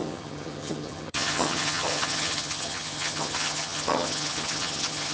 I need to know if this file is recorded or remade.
remade